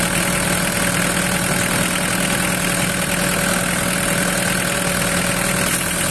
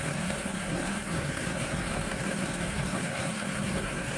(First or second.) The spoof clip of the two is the second